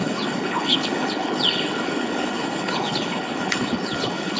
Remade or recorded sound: remade